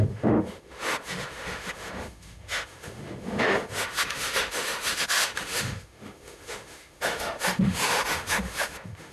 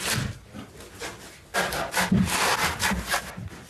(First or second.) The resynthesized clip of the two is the first